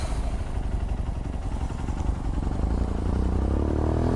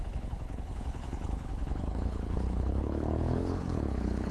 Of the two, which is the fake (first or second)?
second